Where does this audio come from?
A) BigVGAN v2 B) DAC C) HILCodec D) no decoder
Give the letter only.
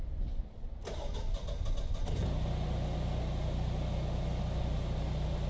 D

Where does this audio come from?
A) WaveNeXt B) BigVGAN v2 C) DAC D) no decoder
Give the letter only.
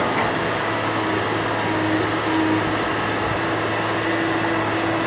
D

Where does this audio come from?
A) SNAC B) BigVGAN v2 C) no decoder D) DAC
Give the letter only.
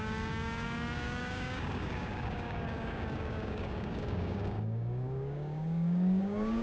D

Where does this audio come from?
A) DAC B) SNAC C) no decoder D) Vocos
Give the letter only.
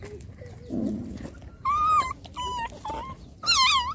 C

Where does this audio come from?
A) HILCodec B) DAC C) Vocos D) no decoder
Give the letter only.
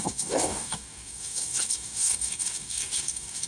B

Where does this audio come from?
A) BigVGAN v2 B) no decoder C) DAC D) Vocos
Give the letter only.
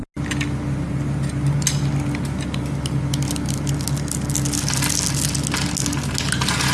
B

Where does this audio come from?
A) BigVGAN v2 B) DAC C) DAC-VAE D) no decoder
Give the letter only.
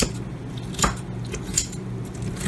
D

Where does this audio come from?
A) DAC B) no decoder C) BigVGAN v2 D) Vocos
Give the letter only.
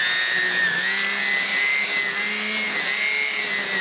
B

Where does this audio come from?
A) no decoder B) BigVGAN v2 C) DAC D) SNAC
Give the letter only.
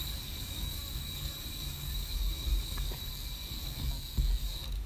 C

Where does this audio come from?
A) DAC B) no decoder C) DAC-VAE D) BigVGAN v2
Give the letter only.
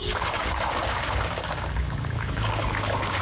A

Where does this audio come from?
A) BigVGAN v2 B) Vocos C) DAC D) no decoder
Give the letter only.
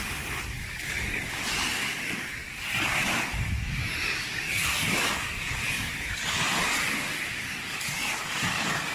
C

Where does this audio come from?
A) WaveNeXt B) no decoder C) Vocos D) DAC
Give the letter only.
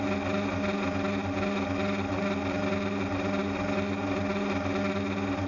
B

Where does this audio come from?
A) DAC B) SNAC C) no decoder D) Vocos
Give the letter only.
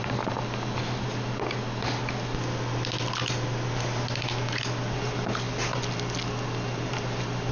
C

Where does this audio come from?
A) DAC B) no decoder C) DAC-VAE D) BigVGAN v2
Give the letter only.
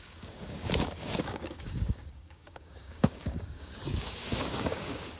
A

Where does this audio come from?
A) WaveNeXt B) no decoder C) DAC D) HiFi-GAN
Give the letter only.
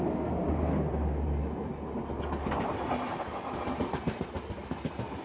B